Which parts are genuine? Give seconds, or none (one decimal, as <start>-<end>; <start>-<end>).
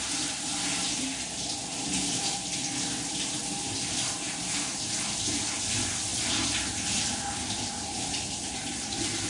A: 6.1-7.3